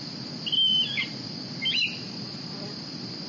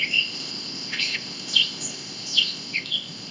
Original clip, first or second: first